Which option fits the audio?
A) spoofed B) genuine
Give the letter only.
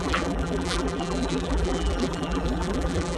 A